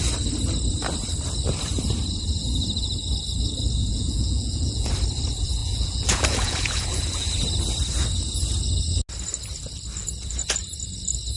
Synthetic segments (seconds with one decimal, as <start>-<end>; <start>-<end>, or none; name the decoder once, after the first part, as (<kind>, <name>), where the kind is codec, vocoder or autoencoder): 3.9-4.9 (vocoder, Vocos); 5.6-7.3